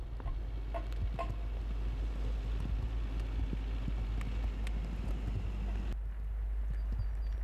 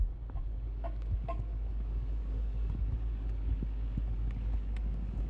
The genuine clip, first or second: first